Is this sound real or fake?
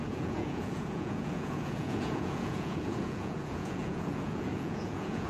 fake